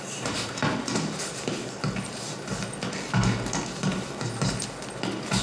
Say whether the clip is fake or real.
real